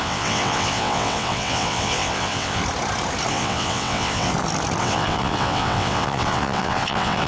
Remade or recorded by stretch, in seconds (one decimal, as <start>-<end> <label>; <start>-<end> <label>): 0.0-2.6 remade; 2.6-3.3 recorded; 3.3-4.3 remade; 4.3-4.8 recorded; 4.8-7.3 remade